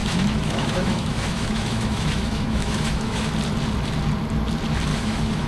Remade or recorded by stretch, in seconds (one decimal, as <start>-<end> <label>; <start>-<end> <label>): 0.0-3.3 remade; 3.3-4.9 recorded; 4.9-5.5 remade